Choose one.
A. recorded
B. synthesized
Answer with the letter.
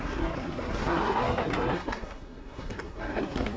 B